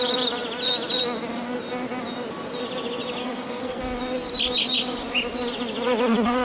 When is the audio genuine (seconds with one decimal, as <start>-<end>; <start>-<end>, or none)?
0.0-3.2; 3.8-6.4